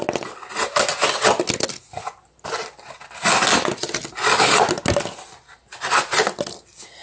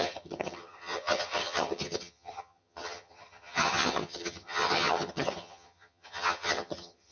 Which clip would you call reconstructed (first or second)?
second